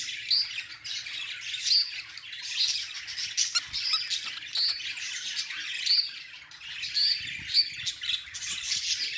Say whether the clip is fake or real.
real